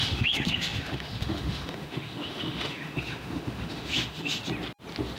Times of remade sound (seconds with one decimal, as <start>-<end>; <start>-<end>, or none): 0.0-4.4

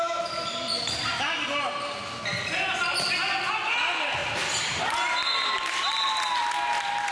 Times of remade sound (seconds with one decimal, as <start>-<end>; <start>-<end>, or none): none

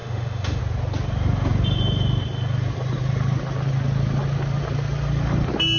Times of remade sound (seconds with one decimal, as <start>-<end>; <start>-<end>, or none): 0.0-0.6

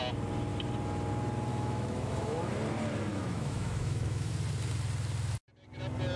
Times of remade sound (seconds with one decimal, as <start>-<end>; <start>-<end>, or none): 1.5-2.5; 3.1-4.3

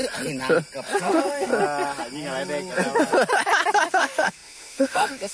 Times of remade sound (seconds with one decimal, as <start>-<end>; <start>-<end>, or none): 1.0-1.5; 3.9-5.3